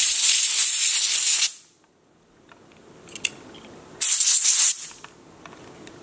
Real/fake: real